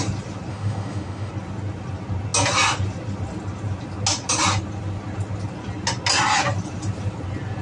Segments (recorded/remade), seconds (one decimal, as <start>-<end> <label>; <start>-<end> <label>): 0.0-0.5 recorded; 0.5-1.3 remade; 1.3-7.6 recorded